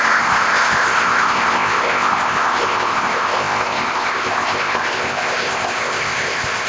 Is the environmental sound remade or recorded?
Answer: remade